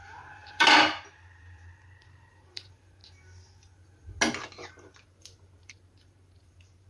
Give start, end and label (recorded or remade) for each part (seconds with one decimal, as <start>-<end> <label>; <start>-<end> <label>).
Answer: 0.0-3.0 remade; 3.0-4.7 recorded; 4.7-6.9 remade